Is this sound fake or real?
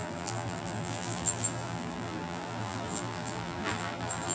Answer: fake